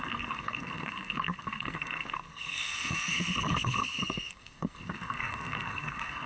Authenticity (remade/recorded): remade